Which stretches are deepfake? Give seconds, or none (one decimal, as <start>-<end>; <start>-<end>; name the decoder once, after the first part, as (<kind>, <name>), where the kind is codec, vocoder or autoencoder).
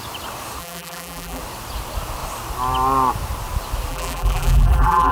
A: 0.6-1.4 (vocoder, BigVGAN v2); 3.9-5.1